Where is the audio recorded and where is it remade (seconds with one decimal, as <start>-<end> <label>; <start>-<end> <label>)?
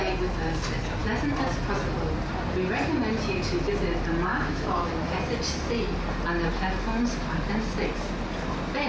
0.0-4.3 recorded; 4.3-4.9 remade; 4.9-8.9 recorded